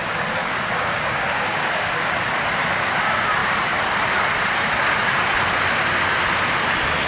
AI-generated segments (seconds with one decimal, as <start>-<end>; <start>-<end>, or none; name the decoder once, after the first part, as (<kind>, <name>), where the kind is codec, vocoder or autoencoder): 0.4-1.9 (codec, DAC)